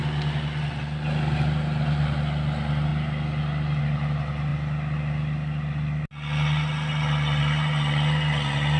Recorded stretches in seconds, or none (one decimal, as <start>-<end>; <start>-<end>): 0.0-8.8